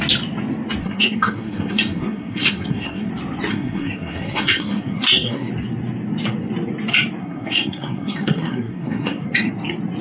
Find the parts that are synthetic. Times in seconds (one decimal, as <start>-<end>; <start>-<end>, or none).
0.8-3.1; 3.5-5.5; 7.2-9.5